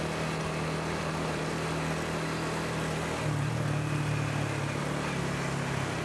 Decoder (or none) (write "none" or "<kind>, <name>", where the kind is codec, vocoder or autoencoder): none